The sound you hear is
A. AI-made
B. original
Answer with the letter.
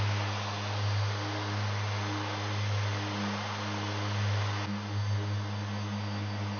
B